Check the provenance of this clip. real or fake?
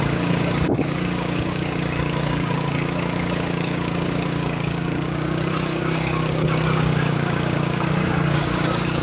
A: fake